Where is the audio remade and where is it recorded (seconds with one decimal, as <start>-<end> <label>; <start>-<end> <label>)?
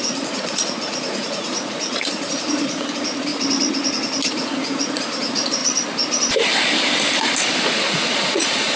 0.0-3.3 remade; 3.3-4.3 recorded; 4.3-5.6 remade; 5.6-7.6 recorded; 7.6-8.8 remade